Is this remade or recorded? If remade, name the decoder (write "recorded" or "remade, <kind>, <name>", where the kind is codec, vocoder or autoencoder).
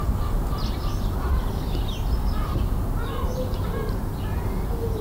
recorded